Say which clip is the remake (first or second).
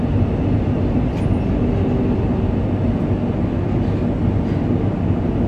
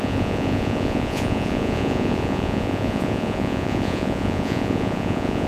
second